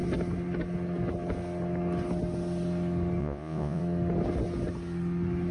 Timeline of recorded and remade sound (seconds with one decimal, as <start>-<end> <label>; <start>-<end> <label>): 0.0-3.2 recorded; 3.2-3.8 remade; 3.8-5.5 recorded